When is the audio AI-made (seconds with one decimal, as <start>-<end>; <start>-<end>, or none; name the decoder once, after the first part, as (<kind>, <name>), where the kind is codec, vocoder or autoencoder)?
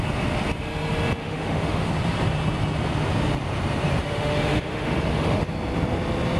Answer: 1.2-1.9 (autoencoder, DAC-VAE); 4.0-5.5